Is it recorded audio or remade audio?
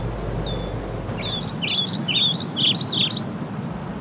recorded